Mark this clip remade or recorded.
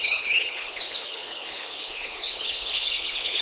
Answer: remade